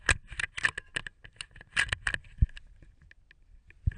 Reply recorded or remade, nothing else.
recorded